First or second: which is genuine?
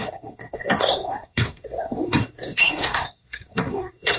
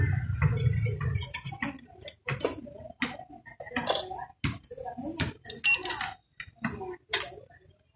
second